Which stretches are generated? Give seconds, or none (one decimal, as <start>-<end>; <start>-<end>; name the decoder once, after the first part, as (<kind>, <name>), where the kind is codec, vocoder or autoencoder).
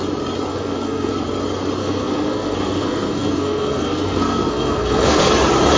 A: 0.5-1.1 (codec, SNAC); 1.8-5.3